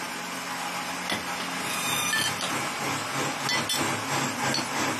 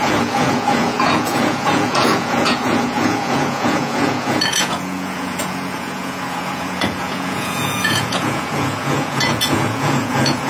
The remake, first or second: second